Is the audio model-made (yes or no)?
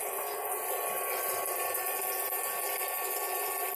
no